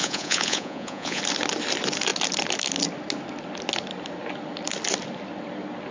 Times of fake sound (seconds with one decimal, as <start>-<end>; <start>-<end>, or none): 0.0-1.2